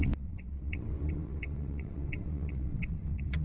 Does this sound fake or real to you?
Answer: fake